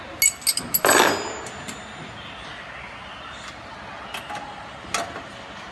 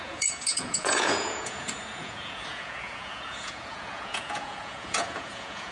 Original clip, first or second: first